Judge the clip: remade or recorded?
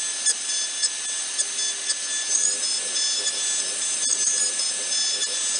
recorded